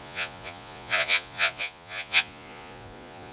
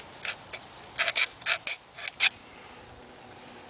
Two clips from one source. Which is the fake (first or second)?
first